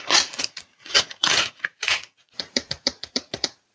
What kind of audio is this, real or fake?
fake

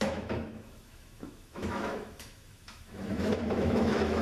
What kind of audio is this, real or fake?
fake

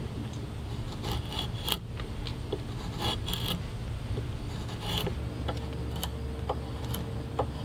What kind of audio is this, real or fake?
real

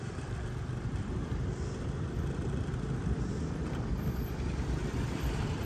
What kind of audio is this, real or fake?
fake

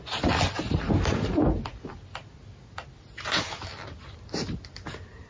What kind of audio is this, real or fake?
real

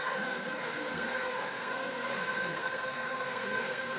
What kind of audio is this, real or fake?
fake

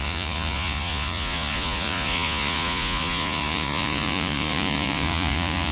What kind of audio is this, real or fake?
fake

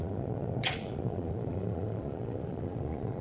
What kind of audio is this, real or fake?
fake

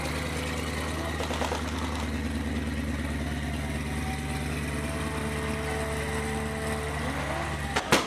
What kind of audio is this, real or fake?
real